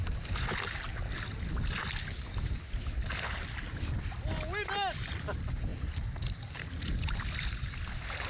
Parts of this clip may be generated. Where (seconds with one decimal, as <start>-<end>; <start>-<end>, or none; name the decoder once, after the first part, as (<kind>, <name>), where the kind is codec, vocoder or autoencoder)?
none